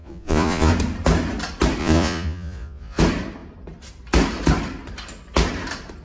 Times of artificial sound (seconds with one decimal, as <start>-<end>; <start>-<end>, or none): 0.0-0.7; 1.8-3.0